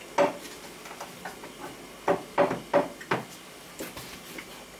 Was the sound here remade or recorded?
recorded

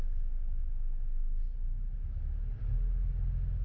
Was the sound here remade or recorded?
recorded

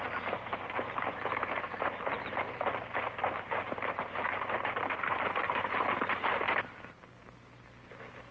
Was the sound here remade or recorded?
recorded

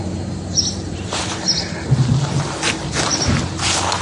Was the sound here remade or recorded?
recorded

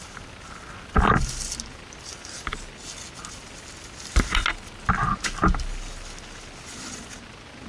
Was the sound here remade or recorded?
recorded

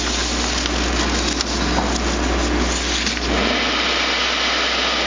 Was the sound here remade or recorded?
recorded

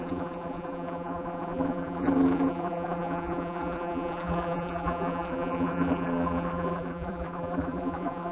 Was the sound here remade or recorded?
remade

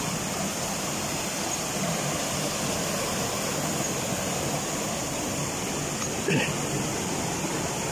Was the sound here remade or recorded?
recorded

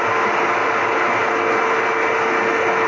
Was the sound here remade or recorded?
recorded